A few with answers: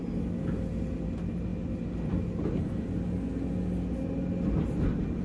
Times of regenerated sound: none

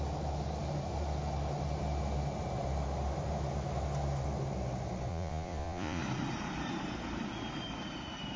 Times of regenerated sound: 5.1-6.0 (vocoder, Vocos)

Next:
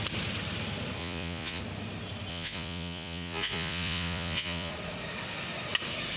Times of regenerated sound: 1.0-1.6 (vocoder, Vocos); 2.3-4.7

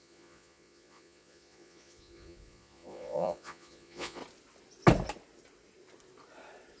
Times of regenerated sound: 0.0-4.2 (vocoder, Vocos)